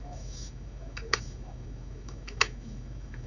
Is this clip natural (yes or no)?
no